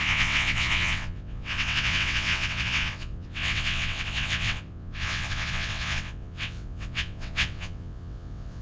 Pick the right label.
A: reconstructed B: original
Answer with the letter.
A